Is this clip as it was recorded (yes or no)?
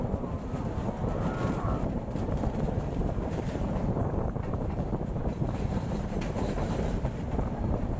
no